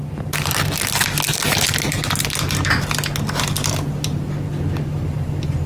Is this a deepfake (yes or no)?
no